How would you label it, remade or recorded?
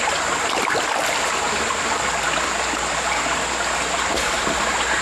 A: recorded